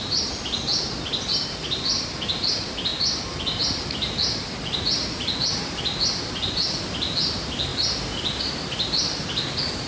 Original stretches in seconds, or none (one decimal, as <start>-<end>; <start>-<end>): 2.9-3.6; 7.7-8.4